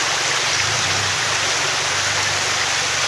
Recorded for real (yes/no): yes